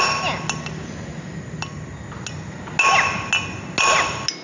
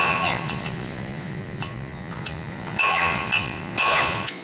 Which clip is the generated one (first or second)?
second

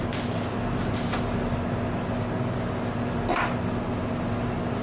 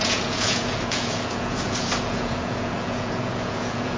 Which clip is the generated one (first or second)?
second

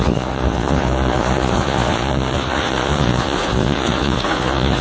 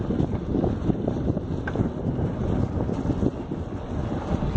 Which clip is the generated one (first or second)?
first